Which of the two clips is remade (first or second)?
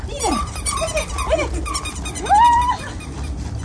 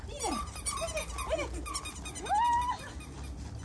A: first